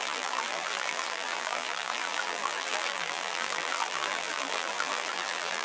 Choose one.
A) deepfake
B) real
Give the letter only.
A